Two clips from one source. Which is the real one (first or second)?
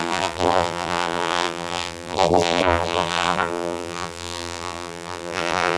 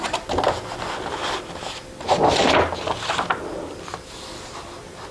second